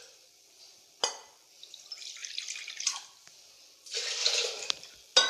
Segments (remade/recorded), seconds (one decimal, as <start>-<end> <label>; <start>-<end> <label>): 0.0-5.3 recorded

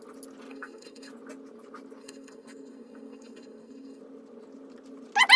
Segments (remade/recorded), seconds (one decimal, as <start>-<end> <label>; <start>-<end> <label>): 0.0-0.5 recorded; 0.5-1.1 remade; 1.1-2.0 recorded; 2.0-4.0 remade; 4.0-5.4 recorded

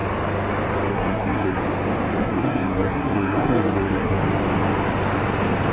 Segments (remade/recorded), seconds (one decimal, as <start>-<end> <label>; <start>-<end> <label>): 0.0-0.9 recorded; 0.9-1.6 remade; 1.6-2.2 recorded; 2.2-4.2 remade; 4.2-5.7 recorded

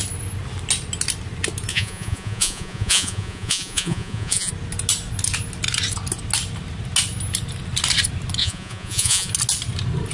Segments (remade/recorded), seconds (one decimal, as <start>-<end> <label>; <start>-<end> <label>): 0.0-1.7 recorded; 1.7-4.5 remade; 4.5-8.4 recorded; 8.4-9.3 remade; 9.3-10.1 recorded